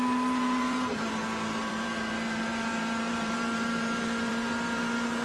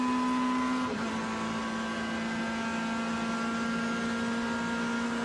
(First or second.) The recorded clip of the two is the second